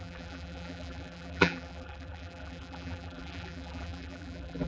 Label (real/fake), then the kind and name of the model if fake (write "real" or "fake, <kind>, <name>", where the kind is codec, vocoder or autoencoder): fake, vocoder, BigVGAN v2